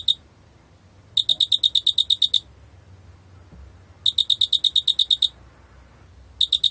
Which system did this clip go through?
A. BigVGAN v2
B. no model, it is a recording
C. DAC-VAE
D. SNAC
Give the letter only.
B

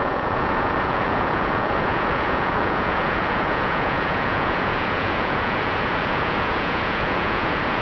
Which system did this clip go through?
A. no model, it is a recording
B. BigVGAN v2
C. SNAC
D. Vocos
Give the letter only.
D